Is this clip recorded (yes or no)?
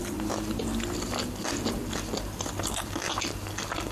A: yes